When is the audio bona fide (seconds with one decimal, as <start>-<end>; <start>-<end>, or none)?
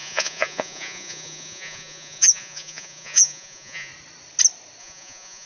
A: 3.9-4.8